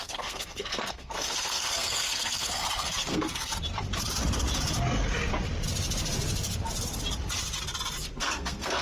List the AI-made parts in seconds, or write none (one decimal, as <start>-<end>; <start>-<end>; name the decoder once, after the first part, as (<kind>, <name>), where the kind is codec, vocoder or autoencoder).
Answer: 0.0-3.5 (codec, SNAC); 8.2-8.8